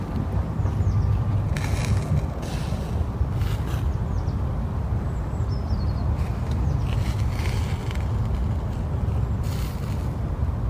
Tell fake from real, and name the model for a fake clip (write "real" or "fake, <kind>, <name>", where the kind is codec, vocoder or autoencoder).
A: real